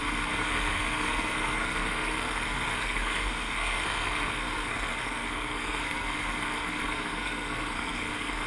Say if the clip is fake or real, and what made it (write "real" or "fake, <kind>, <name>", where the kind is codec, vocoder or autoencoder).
fake, codec, SNAC